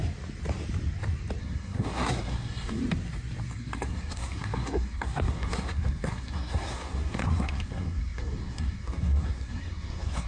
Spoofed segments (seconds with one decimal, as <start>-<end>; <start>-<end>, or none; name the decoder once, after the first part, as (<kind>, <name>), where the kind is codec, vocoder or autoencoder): 1.4-2.8 (codec, SNAC); 3.4-10.3